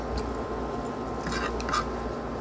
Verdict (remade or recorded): recorded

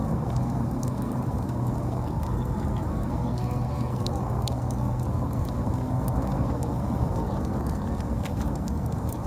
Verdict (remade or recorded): remade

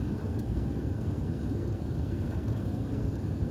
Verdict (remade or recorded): remade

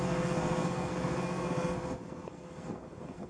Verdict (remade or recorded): remade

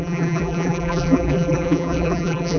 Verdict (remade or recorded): remade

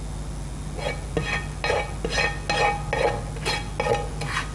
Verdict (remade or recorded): recorded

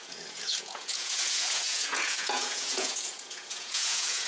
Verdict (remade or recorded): remade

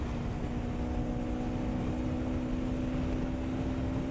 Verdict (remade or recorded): recorded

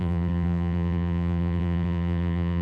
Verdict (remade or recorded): remade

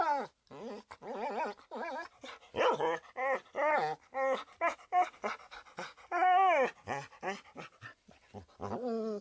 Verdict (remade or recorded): recorded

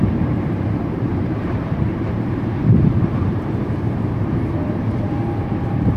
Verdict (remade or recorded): remade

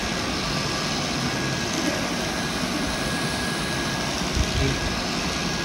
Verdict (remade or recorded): recorded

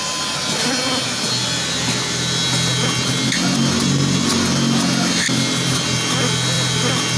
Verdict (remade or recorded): recorded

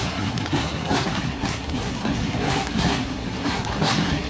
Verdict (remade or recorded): remade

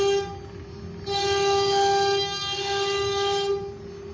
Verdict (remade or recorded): recorded